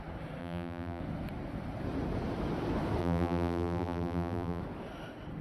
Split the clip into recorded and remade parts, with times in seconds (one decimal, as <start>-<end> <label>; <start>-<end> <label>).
0.0-0.4 recorded; 0.4-1.0 remade; 1.0-3.0 recorded; 3.0-4.6 remade; 4.6-5.4 recorded